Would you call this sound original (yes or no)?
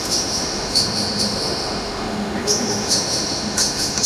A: no